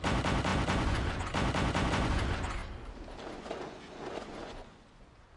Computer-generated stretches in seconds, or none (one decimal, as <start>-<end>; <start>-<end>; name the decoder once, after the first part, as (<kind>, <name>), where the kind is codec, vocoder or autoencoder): 0.0-2.6 (vocoder, Vocos); 3.3-5.4